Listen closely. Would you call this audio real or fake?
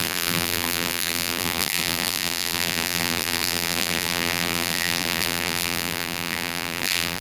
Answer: fake